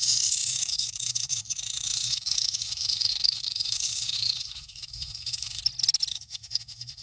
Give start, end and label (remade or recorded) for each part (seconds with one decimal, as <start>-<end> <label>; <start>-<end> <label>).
0.0-5.6 remade; 5.6-6.1 recorded; 6.1-7.0 remade